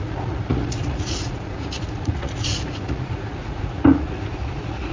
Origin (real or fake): fake